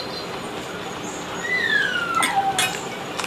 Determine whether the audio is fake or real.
real